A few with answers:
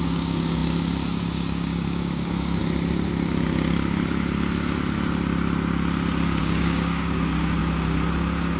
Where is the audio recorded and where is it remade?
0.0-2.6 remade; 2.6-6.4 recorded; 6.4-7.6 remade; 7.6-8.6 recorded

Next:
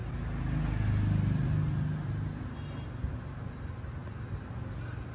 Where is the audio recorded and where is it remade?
0.0-5.1 recorded

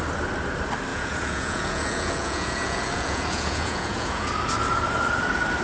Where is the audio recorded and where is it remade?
0.0-0.9 recorded; 0.9-4.3 remade; 4.3-5.6 recorded

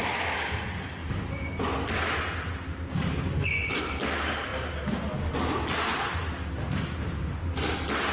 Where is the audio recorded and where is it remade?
0.0-8.1 recorded